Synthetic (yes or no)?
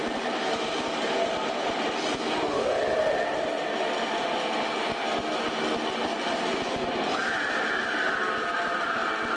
no